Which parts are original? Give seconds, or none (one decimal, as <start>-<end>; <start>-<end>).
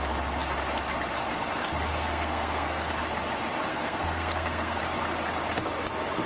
0.0-1.9; 2.9-3.7; 4.8-6.3